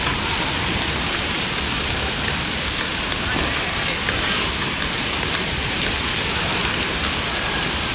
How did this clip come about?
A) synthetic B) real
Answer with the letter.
B